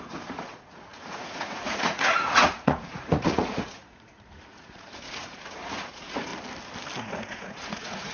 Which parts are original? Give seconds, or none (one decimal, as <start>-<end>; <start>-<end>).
6.3-7.0